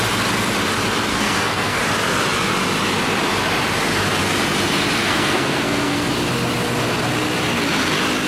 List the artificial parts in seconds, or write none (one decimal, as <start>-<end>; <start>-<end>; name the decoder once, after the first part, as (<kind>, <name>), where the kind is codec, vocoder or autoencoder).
1.1-1.8 (codec, SNAC); 5.0-6.1